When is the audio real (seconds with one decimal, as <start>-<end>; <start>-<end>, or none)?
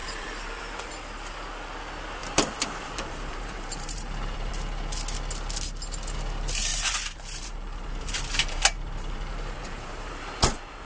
0.9-2.2; 4.5-6.7; 10.3-10.9